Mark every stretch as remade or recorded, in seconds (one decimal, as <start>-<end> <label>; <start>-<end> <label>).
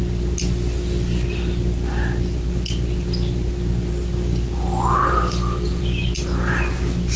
0.0-5.0 recorded; 5.0-5.8 remade; 5.8-7.2 recorded